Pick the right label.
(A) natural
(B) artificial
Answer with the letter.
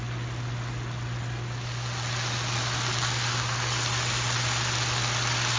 A